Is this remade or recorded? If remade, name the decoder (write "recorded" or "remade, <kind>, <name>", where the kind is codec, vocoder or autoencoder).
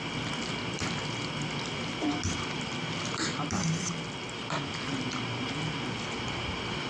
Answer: recorded